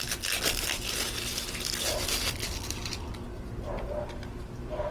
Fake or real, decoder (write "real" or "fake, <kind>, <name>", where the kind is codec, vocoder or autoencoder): real